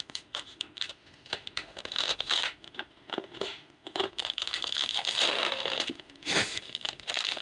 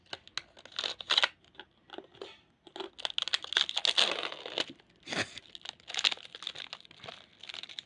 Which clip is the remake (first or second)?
first